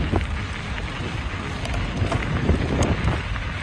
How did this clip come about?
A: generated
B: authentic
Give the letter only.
B